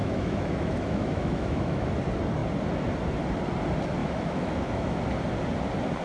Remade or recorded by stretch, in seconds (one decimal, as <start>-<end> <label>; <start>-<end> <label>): 0.0-1.9 remade; 1.9-4.0 recorded; 4.0-5.0 remade; 5.0-6.0 recorded